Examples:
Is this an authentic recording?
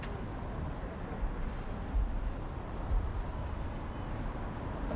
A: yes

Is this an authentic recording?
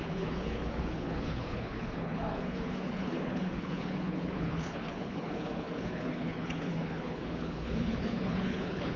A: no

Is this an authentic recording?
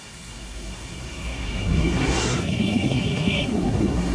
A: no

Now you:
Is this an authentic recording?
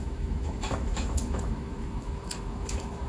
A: no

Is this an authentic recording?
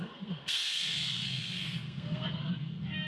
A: no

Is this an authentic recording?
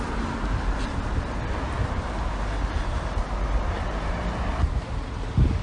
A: yes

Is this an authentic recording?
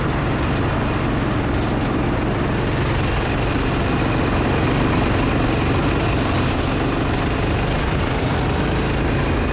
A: yes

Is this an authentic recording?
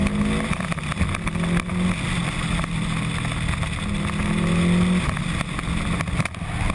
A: yes